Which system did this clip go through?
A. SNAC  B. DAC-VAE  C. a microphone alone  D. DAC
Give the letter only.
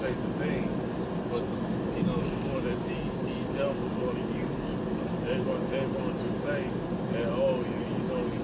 C